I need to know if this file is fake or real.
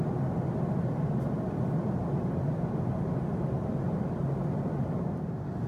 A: real